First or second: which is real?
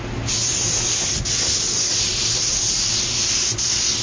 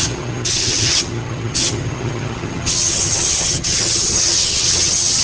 first